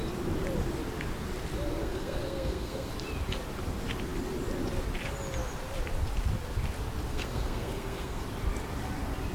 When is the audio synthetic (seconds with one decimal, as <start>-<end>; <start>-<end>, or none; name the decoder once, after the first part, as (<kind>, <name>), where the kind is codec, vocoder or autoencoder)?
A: 1.8-2.9 (codec, SNAC); 7.1-8.2